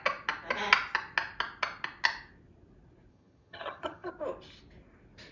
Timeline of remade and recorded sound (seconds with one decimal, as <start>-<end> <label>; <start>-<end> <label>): 0.0-3.1 recorded; 3.1-4.1 remade; 4.1-5.3 recorded